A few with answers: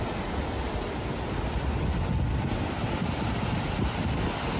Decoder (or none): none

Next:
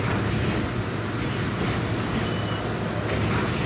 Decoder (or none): none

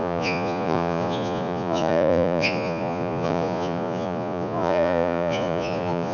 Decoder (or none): vocoder, Vocos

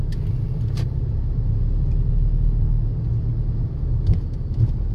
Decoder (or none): none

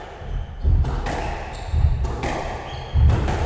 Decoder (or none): none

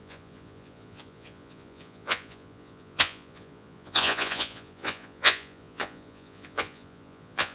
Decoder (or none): vocoder, Vocos